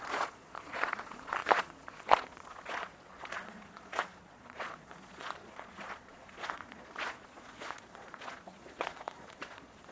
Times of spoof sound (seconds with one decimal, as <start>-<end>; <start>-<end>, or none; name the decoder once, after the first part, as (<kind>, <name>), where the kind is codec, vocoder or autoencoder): 0.0-9.9 (vocoder, Vocos)